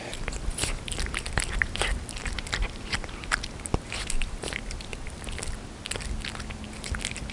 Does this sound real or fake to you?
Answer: real